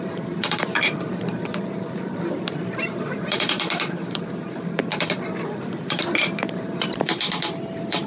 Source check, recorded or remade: remade